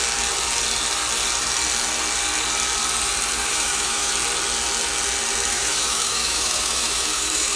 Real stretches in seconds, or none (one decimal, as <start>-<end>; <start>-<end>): 0.0-3.4; 4.1-5.5